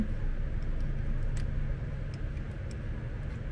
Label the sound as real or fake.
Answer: real